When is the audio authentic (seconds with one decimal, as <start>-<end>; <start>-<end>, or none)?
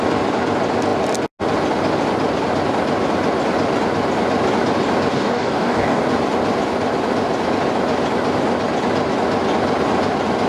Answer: 0.0-5.1; 6.0-10.5